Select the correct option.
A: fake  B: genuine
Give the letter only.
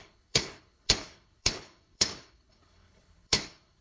A